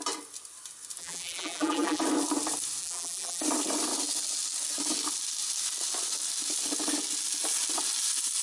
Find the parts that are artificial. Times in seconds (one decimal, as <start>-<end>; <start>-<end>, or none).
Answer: 1.0-2.0; 2.8-3.4